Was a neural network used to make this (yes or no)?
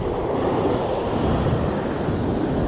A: no